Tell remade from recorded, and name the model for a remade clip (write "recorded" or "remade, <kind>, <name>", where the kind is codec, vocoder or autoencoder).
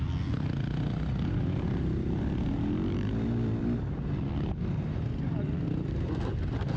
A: recorded